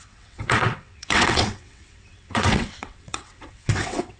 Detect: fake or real fake